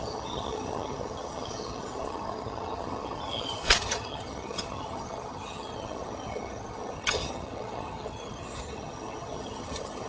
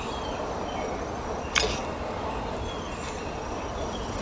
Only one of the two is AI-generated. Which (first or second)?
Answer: first